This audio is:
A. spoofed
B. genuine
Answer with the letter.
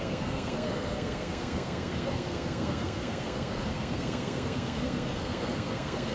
A